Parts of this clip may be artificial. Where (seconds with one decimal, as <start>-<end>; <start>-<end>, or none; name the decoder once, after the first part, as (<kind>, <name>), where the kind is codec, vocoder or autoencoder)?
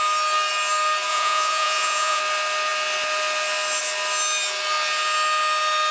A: 1.1-2.2 (vocoder, Vocos)